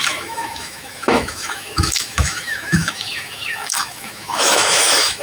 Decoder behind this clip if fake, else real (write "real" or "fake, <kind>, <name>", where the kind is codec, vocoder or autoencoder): fake, autoencoder, DAC-VAE